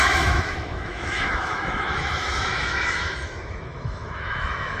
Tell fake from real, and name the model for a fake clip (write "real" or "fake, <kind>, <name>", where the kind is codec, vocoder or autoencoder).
fake, autoencoder, DAC-VAE